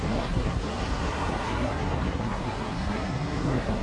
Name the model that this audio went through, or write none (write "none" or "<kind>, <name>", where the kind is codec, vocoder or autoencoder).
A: codec, SNAC